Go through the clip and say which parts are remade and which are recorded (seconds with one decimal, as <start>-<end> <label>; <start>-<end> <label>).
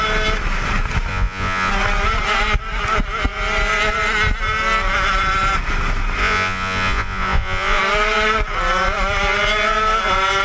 0.0-1.1 recorded; 1.1-1.7 remade; 1.7-6.2 recorded; 6.2-7.8 remade; 7.8-10.4 recorded